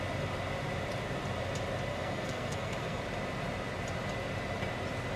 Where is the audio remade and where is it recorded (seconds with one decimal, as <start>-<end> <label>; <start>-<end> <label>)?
0.0-1.9 recorded; 1.9-3.0 remade; 3.0-5.2 recorded